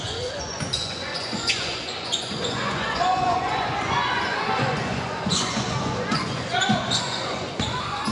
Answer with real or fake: fake